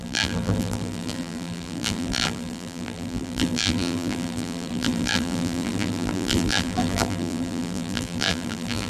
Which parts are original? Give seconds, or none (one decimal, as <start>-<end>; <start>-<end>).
none